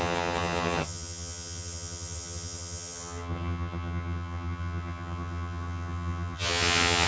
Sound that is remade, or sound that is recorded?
remade